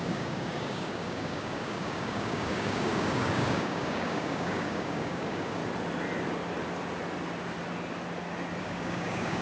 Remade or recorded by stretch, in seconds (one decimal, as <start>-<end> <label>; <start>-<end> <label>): 0.0-5.6 remade; 5.6-8.6 recorded; 8.6-9.4 remade